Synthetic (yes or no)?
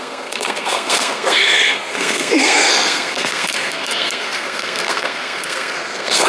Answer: yes